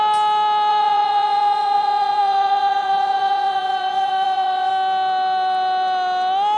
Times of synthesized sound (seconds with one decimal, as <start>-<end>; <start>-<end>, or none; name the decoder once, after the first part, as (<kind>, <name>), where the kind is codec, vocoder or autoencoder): 0.7-4.7 (vocoder, Vocos)